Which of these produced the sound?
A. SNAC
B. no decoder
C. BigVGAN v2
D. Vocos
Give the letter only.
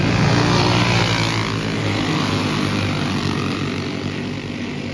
B